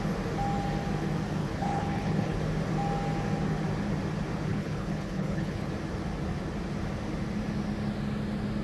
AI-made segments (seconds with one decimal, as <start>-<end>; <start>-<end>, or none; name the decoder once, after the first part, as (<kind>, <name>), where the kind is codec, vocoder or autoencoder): 1.4-2.4 (codec, HILCodec); 4.5-5.7